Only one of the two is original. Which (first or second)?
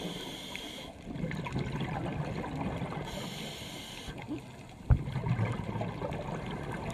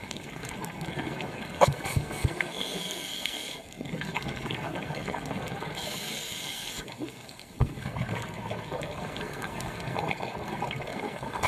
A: first